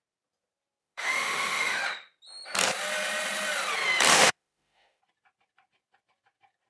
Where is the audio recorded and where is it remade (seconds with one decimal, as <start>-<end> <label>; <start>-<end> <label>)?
0.0-0.8 recorded; 0.8-1.8 remade; 1.8-4.1 recorded; 4.1-5.0 remade; 5.0-6.7 recorded

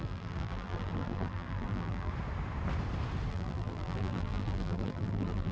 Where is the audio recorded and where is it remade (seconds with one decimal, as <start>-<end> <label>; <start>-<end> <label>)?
0.0-2.1 remade; 2.1-3.3 recorded; 3.3-5.5 remade

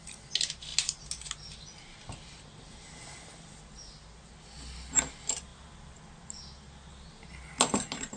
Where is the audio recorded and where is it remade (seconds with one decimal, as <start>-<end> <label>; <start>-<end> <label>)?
0.0-8.2 recorded

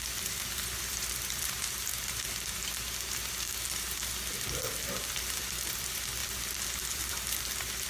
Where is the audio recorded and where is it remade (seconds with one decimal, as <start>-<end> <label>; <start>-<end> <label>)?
0.0-1.9 remade; 1.9-5.1 recorded; 5.1-6.2 remade; 6.2-6.8 recorded; 6.8-7.9 remade

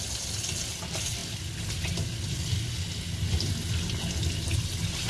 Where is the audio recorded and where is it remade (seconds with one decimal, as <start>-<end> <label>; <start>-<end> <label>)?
0.0-5.1 recorded